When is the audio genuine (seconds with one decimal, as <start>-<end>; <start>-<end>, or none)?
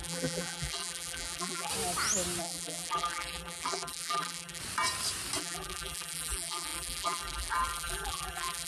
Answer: 1.7-2.4; 4.6-5.4